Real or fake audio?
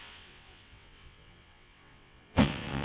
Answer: fake